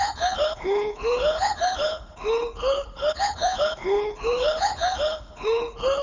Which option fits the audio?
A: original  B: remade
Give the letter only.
B